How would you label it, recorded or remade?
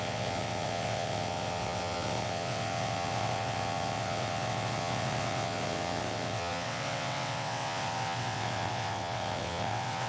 remade